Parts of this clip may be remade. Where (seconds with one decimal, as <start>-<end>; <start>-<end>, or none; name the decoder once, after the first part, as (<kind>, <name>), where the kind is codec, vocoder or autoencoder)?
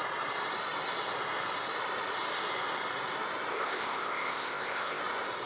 3.5-5.0 (codec, ZipCodec)